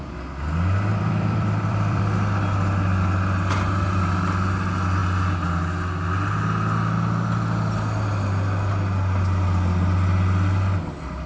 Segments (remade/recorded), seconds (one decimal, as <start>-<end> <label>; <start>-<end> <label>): 0.0-0.9 recorded; 0.9-2.0 remade; 2.0-11.3 recorded